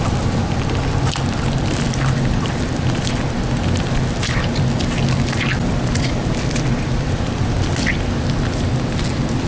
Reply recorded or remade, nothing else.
recorded